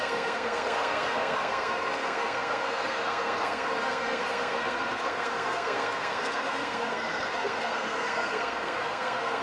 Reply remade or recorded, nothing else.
remade